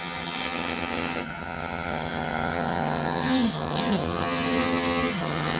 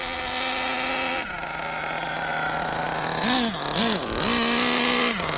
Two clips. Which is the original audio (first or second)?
second